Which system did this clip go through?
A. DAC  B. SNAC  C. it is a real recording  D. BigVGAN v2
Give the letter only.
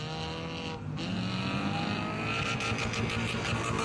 C